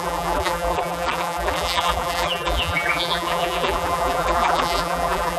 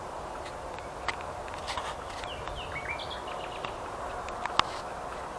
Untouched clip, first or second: second